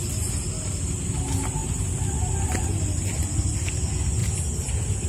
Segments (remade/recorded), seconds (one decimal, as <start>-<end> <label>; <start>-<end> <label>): 0.0-4.2 recorded; 4.2-5.1 remade